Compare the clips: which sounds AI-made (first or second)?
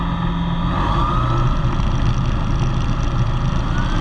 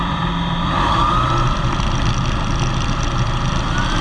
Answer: second